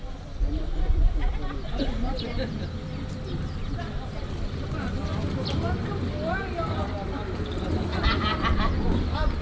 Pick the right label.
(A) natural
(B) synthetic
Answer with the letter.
A